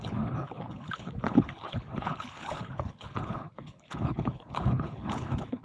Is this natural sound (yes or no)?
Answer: no